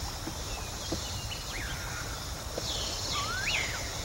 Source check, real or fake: real